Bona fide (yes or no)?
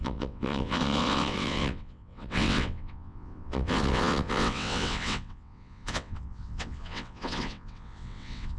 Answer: no